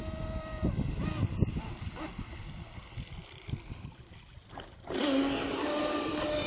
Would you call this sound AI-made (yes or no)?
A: no